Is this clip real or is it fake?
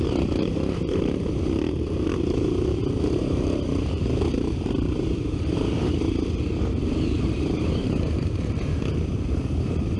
fake